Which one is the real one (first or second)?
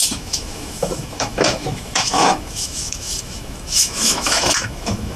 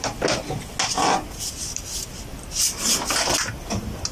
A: second